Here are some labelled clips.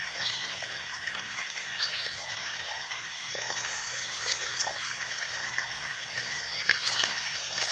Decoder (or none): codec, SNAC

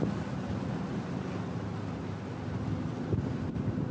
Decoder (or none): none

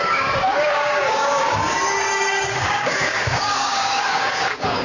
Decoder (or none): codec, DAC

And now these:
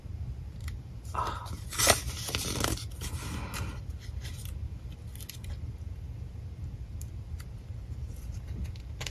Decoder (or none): none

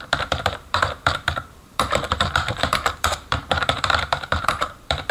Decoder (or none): vocoder, BigVGAN v2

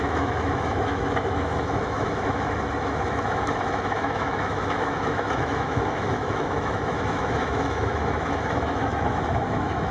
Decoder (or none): autoencoder, DAC-VAE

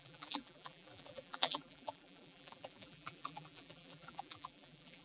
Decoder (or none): vocoder, BigVGAN v2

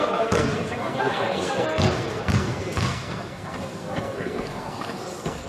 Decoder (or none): codec, SNAC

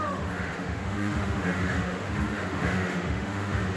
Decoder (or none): autoencoder, DAC-VAE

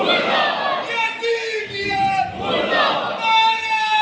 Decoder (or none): none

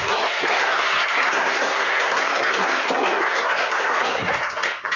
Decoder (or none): codec, SNAC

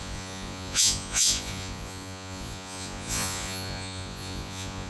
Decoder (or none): vocoder, Vocos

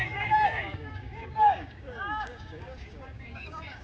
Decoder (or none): codec, DAC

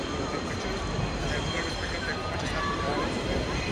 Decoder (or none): none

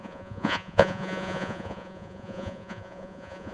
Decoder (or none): vocoder, Vocos